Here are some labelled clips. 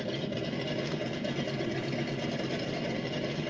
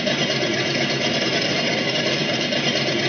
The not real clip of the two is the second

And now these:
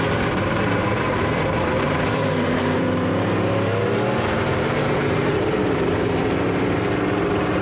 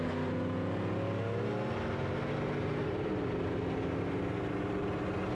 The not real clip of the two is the first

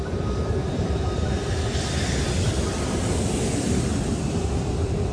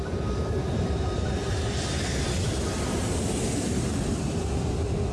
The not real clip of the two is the first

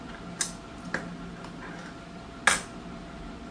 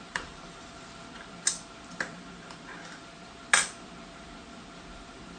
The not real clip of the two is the second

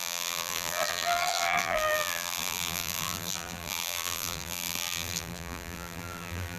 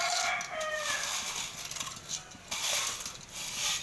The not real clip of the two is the first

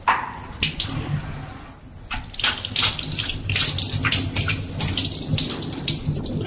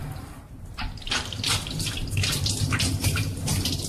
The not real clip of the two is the second